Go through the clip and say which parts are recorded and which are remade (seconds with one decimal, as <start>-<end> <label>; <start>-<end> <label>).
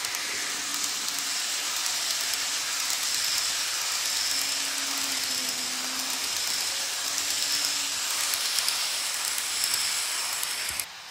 0.0-11.1 recorded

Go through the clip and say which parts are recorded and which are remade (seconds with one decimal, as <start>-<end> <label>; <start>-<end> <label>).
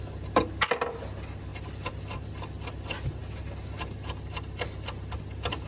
0.0-5.7 recorded